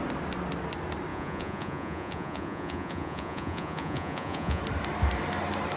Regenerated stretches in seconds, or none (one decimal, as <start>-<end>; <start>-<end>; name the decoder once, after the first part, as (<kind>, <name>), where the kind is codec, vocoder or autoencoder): 1.1-4.6 (vocoder, Vocos)